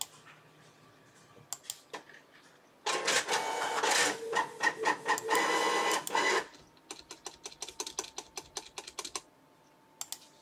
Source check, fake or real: real